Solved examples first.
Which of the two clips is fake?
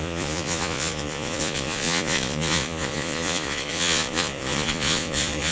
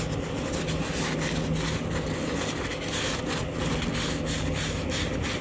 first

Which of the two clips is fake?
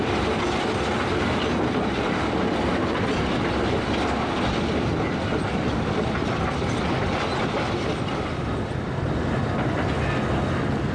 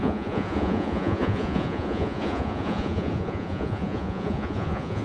second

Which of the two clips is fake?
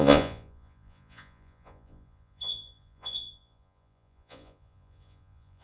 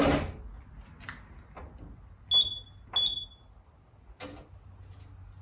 first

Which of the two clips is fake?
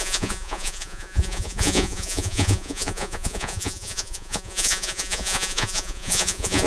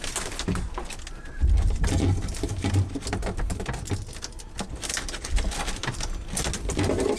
first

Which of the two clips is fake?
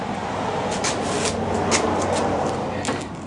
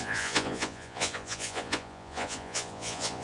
second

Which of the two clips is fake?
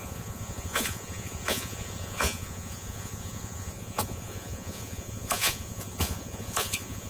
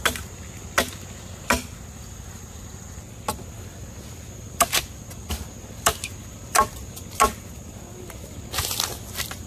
first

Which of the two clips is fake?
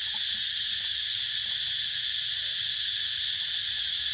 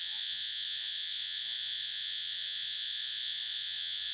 second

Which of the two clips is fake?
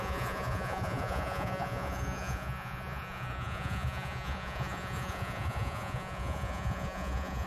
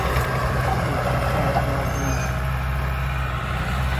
first